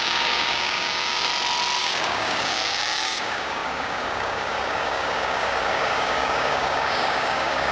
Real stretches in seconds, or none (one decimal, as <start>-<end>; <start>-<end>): 1.3-1.8

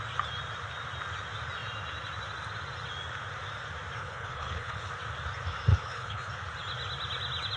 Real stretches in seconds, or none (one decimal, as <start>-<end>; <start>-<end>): 0.0-4.0; 4.9-5.7; 6.3-7.6

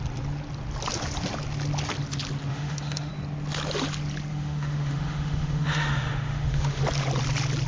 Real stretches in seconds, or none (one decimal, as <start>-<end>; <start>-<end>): 0.0-2.5; 3.1-4.3; 6.8-7.7